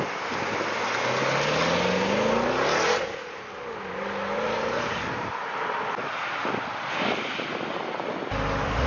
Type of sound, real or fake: real